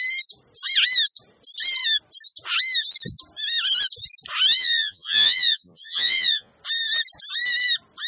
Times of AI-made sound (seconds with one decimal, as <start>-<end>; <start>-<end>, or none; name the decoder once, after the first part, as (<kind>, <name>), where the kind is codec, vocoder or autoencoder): 4.6-6.5 (vocoder, Vocos)